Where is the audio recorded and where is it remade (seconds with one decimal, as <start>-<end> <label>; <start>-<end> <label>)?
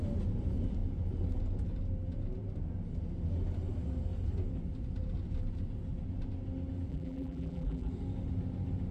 0.0-6.9 recorded; 6.9-7.9 remade; 7.9-8.9 recorded